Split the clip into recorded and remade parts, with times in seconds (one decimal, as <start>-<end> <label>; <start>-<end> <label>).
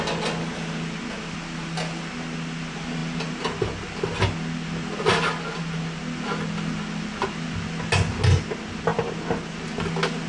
0.0-10.3 recorded